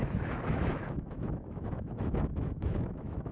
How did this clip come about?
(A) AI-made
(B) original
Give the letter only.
A